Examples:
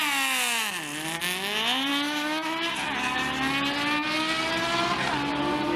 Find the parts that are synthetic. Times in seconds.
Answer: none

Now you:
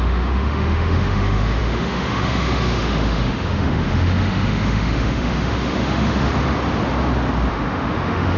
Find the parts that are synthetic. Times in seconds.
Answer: 0.0-6.3 (autoencoder, DAC-VAE); 7.5-8.4

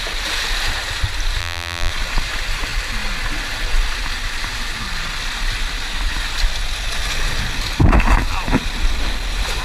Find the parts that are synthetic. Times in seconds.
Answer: 1.4-1.9 (vocoder, BigVGAN v2)

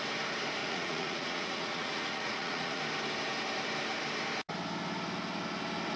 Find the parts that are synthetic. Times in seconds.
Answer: 0.6-2.8 (vocoder, Vocos)

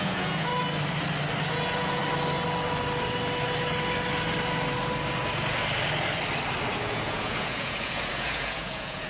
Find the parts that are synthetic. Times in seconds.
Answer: 0.0-0.5 (vocoder, Vocos); 1.5-2.0; 6.8-9.1